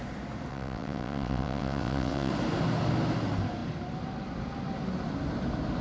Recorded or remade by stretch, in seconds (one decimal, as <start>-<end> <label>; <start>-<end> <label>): 0.0-0.5 recorded; 0.5-2.3 remade; 2.3-5.8 recorded